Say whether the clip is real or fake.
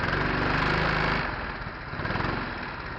real